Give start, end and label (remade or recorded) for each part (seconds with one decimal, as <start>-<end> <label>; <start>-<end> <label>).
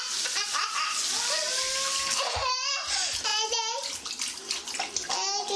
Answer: 0.0-5.6 recorded